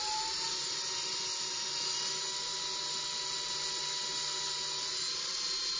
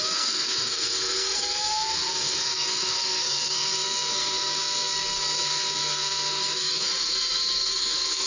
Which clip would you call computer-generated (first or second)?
second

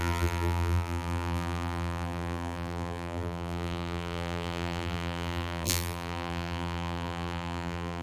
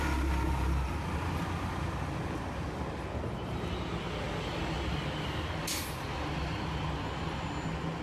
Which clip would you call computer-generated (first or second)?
first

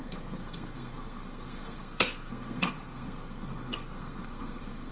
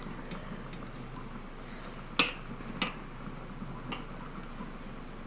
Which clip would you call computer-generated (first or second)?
first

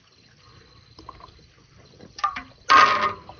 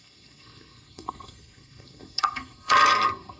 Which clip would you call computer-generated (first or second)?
second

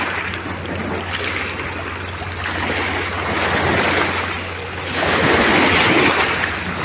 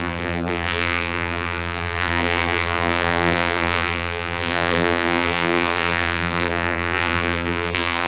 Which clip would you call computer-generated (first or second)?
second